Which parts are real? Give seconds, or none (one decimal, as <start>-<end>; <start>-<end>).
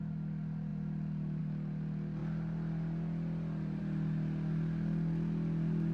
0.0-5.9